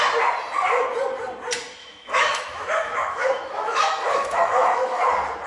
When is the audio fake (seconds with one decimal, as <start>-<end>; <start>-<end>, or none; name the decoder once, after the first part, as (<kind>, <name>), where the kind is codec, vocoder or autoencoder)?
1.8-5.0 (autoencoder, DAC-VAE)